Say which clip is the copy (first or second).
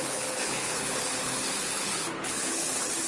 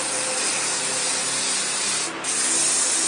first